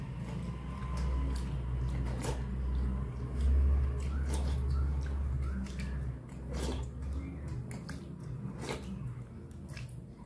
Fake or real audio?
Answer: real